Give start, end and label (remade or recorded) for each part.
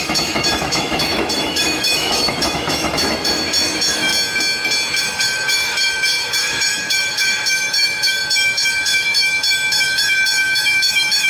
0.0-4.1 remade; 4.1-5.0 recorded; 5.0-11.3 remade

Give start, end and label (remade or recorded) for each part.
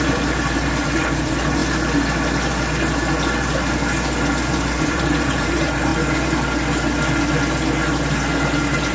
0.0-1.6 remade; 1.6-4.5 recorded; 4.5-5.9 remade; 5.9-8.9 recorded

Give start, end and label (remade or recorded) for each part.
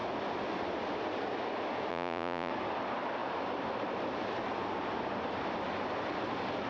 0.0-1.9 recorded; 1.9-2.5 remade; 2.5-6.7 recorded